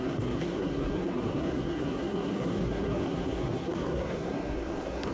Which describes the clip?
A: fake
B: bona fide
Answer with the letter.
A